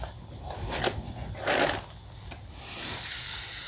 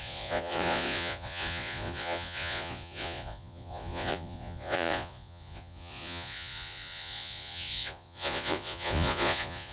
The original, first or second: first